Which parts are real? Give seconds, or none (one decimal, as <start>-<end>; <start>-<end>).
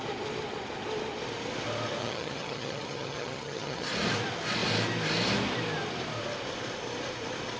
0.0-2.0; 3.9-7.6